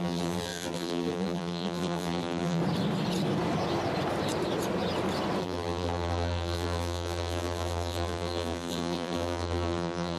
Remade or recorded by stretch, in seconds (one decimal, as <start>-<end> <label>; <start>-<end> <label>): 0.0-2.6 remade; 2.6-5.4 recorded; 5.4-10.2 remade